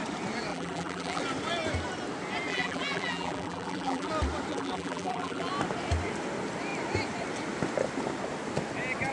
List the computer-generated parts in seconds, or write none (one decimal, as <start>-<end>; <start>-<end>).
0.5-1.2; 2.5-4.1; 4.5-5.5